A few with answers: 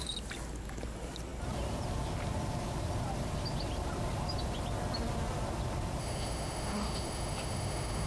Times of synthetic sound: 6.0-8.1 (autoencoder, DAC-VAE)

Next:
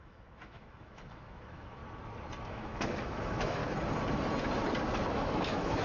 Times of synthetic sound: 0.0-1.8 (autoencoder, DAC-VAE); 2.5-3.6; 5.1-5.8

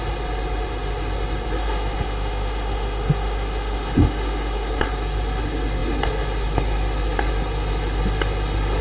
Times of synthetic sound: 1.6-4.7 (autoencoder, DAC-VAE)

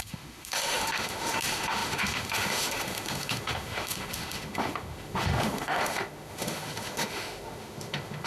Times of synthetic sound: 0.0-8.3 (autoencoder, DAC-VAE)